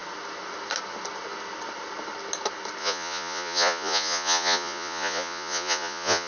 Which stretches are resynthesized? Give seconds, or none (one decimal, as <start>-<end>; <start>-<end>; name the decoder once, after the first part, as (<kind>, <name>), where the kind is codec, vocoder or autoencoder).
2.8-6.3 (vocoder, Vocos)